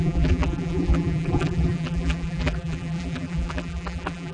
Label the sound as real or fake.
fake